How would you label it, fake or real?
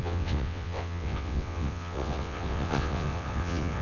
fake